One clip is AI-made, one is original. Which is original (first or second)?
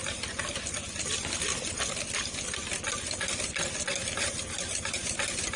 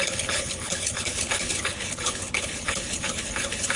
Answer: first